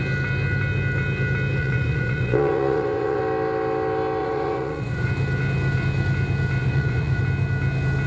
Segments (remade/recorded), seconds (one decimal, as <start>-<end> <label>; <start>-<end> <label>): 0.0-1.6 recorded; 1.6-3.2 remade; 3.2-4.2 recorded; 4.2-5.1 remade; 5.1-6.6 recorded; 6.6-7.2 remade; 7.2-8.1 recorded